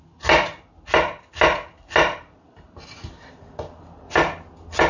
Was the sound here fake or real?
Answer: real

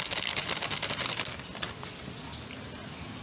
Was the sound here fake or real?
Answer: real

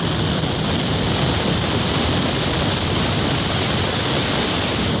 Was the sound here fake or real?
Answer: real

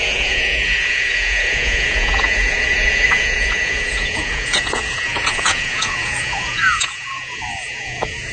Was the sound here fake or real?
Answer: fake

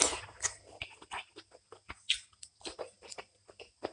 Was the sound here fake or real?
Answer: real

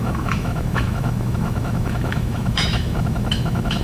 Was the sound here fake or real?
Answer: fake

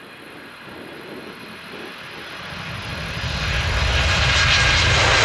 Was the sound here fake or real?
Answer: real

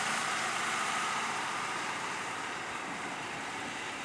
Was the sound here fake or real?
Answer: fake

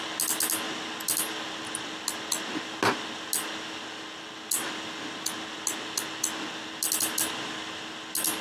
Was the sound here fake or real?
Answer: real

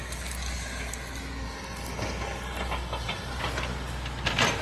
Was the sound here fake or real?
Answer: real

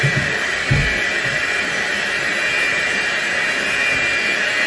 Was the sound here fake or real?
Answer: real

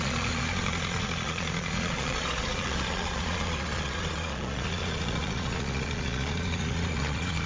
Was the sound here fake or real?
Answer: fake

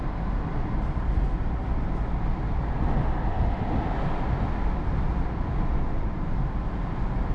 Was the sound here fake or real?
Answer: real